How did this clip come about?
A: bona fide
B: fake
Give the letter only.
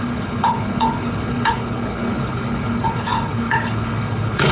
B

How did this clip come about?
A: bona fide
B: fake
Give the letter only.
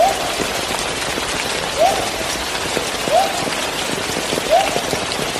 B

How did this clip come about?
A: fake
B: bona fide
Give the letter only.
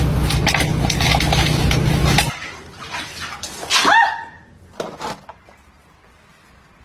B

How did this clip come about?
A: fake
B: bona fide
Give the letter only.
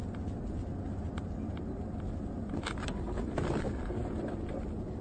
B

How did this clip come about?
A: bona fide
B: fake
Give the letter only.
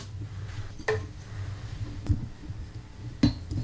A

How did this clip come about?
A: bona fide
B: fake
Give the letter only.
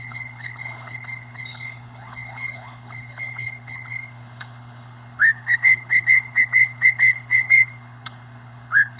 B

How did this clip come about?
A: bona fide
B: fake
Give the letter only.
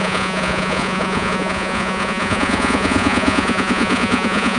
B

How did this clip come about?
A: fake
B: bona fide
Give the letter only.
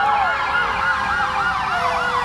A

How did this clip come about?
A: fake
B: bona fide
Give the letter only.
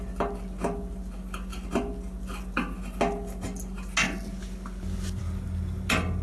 B